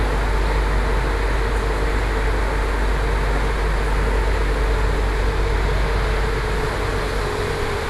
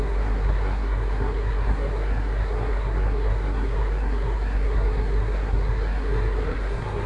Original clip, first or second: first